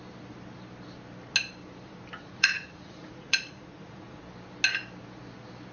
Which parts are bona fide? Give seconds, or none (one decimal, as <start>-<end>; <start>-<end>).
0.0-2.2; 4.2-5.7